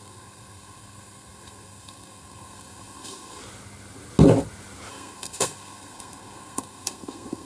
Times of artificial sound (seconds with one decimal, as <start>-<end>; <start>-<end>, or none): 0.0-3.4; 4.9-7.5